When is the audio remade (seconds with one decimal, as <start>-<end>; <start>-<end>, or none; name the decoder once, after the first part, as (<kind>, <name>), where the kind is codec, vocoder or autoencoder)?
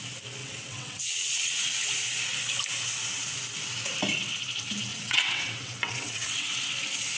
0.4-1.8 (vocoder, WaveNeXt); 4.9-6.7